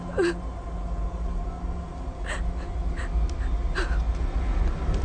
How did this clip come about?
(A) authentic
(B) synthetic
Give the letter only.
A